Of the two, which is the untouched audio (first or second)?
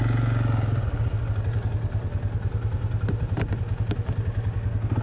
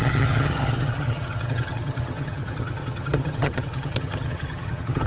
first